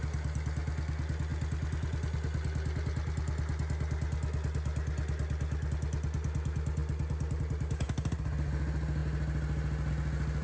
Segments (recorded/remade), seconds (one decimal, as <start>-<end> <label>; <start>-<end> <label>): 0.0-10.4 recorded